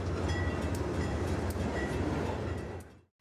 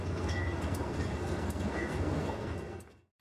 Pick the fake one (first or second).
second